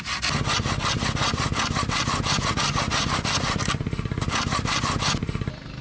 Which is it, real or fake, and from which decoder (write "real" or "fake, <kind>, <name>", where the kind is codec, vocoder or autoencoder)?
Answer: real